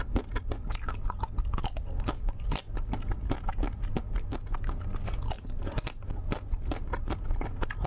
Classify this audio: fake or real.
real